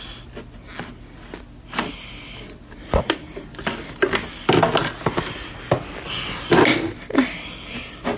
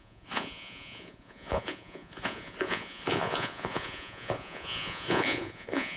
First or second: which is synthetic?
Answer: second